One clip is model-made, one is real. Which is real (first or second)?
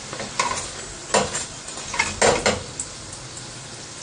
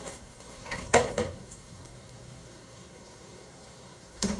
first